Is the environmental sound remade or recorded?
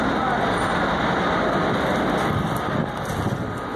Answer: recorded